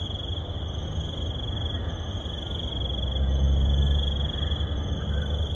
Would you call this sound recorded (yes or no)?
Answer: yes